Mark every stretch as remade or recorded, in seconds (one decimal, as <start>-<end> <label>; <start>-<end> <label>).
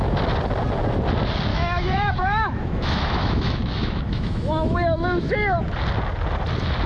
0.0-1.5 recorded; 1.5-5.6 remade; 5.6-6.9 recorded